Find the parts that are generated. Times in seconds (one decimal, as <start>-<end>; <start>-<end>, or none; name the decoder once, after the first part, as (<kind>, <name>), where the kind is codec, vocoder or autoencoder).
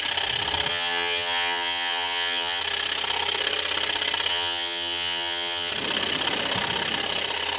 0.7-2.6 (vocoder, HiFi-GAN); 4.3-5.7